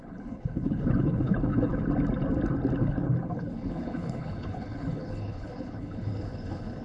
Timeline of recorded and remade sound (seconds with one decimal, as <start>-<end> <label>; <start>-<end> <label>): 0.0-1.7 remade; 1.7-2.8 recorded; 2.8-6.8 remade